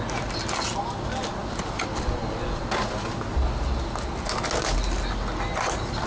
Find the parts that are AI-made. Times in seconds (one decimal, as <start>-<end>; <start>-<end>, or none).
none